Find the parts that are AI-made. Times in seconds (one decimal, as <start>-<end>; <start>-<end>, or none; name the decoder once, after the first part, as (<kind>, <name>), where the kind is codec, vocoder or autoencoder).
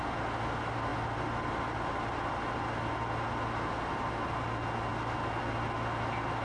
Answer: none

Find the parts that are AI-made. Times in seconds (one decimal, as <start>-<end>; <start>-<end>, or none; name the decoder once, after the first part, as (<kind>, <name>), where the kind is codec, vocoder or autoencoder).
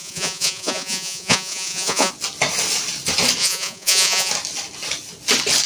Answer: 0.0-2.1 (vocoder, Vocos); 3.4-4.3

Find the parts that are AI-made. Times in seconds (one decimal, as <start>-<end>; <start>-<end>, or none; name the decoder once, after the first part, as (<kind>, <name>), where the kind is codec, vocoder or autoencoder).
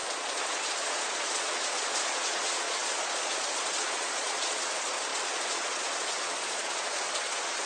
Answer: 0.0-7.7 (vocoder, Vocos)